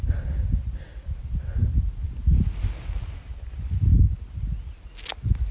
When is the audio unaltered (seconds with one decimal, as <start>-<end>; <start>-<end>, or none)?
0.0-5.5